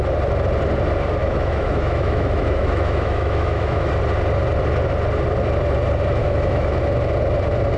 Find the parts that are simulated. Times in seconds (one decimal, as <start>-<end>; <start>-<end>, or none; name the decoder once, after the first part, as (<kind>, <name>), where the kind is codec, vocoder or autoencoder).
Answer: 1.2-3.9 (autoencoder, DAC-VAE); 6.2-6.8